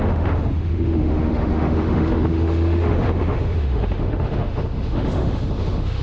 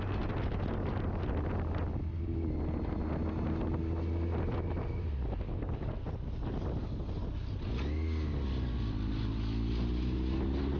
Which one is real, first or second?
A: second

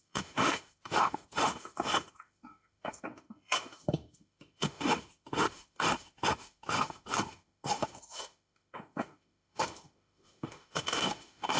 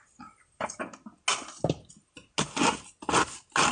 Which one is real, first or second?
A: second